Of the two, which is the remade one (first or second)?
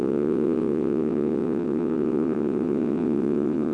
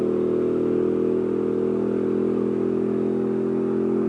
first